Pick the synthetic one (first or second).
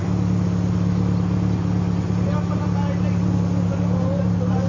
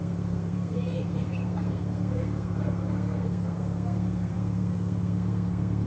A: second